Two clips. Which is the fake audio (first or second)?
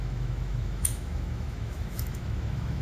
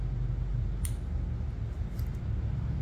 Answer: first